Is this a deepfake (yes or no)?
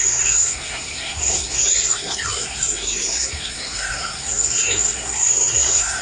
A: yes